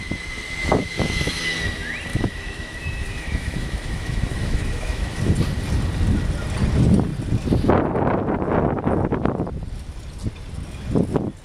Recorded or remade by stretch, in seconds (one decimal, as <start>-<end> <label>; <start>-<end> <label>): 0.0-0.6 recorded; 0.6-1.4 remade; 1.4-2.1 recorded; 2.1-5.2 remade; 5.2-11.4 recorded